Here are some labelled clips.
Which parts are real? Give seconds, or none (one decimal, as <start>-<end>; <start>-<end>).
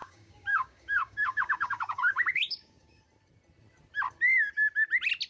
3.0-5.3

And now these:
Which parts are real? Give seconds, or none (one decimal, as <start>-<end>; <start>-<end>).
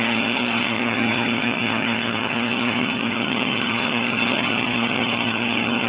none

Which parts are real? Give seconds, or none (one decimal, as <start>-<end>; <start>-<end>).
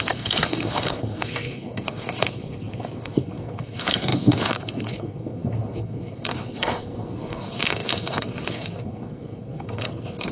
none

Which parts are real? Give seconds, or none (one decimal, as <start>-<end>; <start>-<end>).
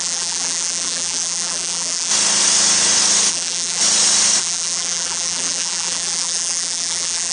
2.1-3.3; 3.8-4.4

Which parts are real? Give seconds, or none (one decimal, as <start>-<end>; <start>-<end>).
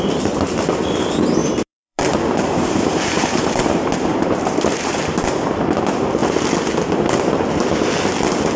0.0-1.4; 5.3-8.6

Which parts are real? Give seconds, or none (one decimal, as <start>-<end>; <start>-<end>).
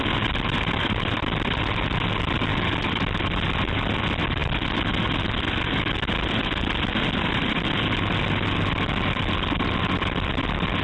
0.0-10.8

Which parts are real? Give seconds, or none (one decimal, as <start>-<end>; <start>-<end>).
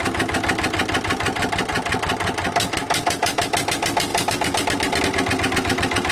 0.0-4.1; 5.0-6.1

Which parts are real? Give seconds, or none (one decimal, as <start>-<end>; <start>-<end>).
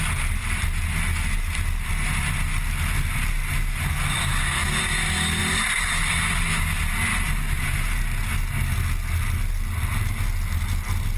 0.0-5.4; 6.5-7.1; 8.0-11.2